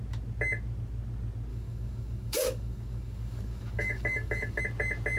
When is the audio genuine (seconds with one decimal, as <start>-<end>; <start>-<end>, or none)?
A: 0.0-1.5; 4.6-5.2